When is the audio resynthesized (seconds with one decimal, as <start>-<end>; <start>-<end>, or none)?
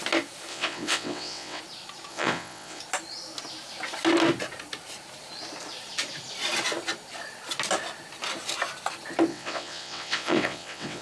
0.5-1.6; 2.1-2.8; 9.3-11.0